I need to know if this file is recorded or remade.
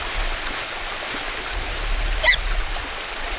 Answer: recorded